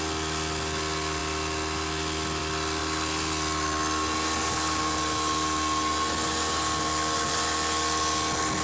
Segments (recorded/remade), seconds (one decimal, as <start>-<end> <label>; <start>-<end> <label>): 0.0-8.6 recorded